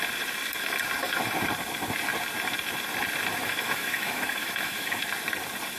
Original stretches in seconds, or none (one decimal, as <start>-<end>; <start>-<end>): 0.0-3.3; 5.0-5.8